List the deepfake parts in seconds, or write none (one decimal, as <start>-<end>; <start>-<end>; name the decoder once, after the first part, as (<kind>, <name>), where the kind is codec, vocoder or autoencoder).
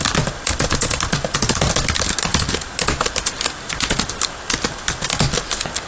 none